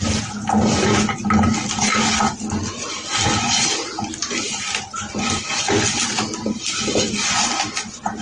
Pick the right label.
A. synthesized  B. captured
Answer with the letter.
B